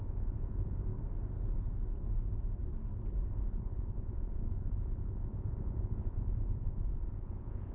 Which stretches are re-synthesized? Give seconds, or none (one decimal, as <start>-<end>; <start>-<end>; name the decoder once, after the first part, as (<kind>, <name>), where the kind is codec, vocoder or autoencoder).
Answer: 0.0-0.9 (vocoder, Vocos); 3.3-7.7